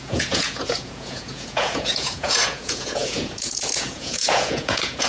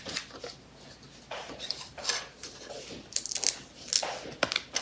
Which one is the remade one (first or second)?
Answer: first